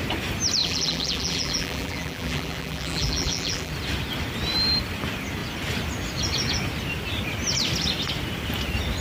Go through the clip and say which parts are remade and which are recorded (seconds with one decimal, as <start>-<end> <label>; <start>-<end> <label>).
0.0-0.6 recorded; 0.6-3.7 remade; 3.7-9.0 recorded